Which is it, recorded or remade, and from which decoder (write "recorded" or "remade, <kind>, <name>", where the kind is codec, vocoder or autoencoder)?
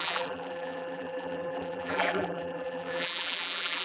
remade, vocoder, BigVGAN v2